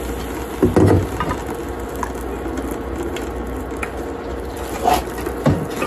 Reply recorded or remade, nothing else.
recorded